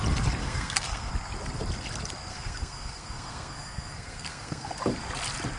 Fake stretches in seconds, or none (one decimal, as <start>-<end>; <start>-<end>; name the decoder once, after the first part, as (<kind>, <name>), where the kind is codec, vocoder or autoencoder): 0.4-1.1 (codec, SNAC); 2.3-4.7